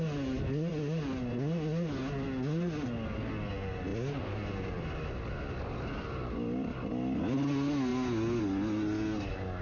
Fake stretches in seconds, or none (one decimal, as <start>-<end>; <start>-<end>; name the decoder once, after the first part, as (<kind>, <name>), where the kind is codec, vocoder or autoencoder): none